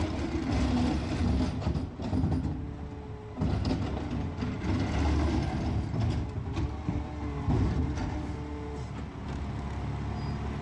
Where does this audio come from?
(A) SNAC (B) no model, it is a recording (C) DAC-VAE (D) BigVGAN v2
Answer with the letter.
B